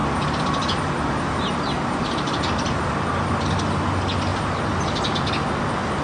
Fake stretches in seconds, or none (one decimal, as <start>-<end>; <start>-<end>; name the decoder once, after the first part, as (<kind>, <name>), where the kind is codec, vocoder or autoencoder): 0.0-3.6 (vocoder, BigVGAN v2); 4.3-5.3